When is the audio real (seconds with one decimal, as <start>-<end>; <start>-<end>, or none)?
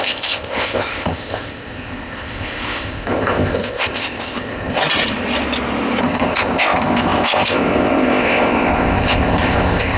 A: 4.8-6.0